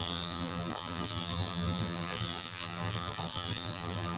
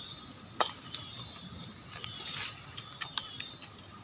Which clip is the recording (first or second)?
second